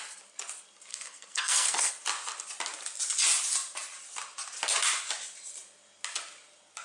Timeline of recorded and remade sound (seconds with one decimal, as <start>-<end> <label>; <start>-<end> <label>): 0.0-0.9 recorded; 0.9-1.9 remade; 1.9-6.8 recorded